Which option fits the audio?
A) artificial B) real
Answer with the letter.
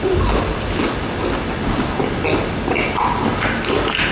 B